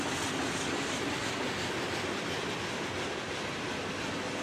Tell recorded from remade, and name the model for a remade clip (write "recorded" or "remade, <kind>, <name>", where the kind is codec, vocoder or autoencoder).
recorded